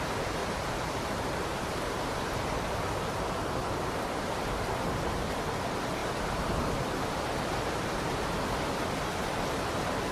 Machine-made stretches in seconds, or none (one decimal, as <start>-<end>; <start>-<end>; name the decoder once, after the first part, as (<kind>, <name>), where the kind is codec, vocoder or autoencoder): 0.4-2.8 (vocoder, BigVGAN v2)